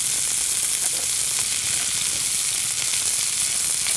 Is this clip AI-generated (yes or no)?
no